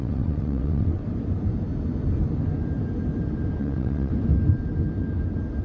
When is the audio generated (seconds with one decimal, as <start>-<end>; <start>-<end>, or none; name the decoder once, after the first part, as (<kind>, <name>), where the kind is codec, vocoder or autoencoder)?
0.0-1.0 (vocoder, WaveNeXt); 3.6-4.1